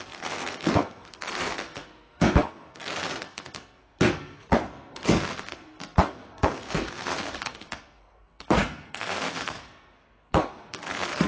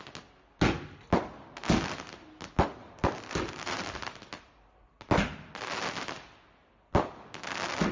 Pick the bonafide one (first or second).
second